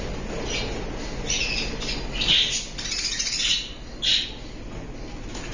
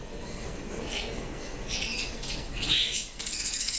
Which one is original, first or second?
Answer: first